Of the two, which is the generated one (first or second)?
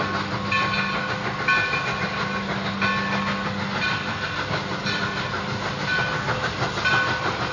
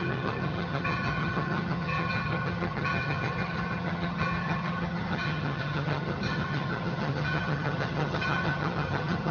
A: second